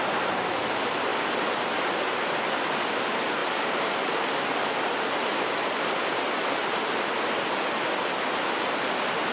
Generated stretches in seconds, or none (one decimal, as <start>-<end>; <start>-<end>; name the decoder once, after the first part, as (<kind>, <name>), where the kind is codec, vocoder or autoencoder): none